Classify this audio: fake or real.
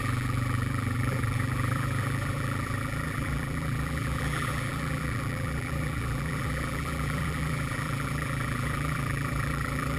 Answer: fake